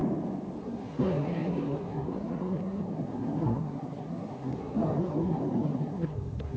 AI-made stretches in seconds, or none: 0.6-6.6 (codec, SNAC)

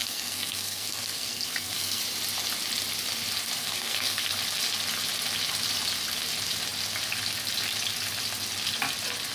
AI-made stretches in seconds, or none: 0.0-2.0 (codec, SNAC); 3.6-4.3

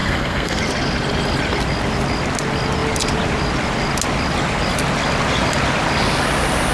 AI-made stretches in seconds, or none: 0.0-0.6 (codec, SNAC)

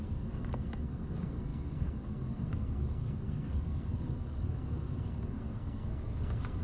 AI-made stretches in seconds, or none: 0.0-6.6 (codec, SNAC)